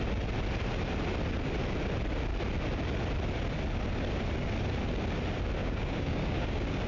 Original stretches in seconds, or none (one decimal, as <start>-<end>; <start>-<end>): 0.0-5.6